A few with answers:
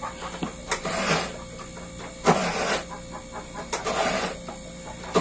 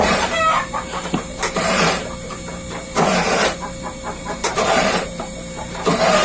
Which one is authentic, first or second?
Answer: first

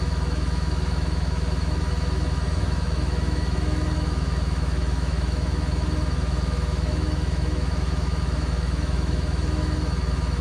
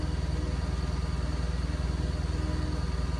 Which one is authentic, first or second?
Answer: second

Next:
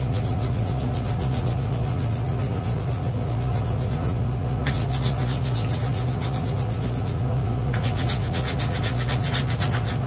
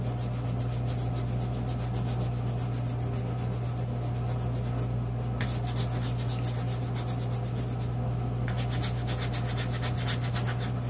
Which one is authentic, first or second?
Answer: second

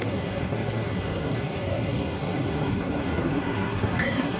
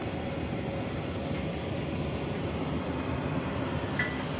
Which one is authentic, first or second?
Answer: second